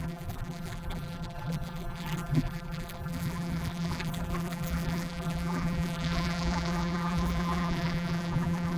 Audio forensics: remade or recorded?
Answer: remade